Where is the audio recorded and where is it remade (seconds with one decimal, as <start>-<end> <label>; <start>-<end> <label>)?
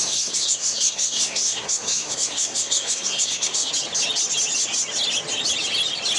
0.0-3.7 remade; 3.7-6.2 recorded